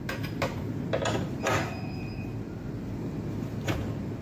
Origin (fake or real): real